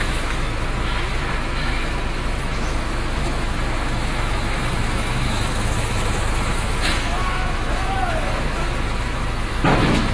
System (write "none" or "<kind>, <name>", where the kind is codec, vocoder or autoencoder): autoencoder, DAC-VAE